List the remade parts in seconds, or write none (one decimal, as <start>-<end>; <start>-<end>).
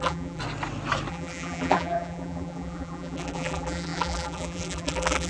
0.0-0.4; 1.1-5.3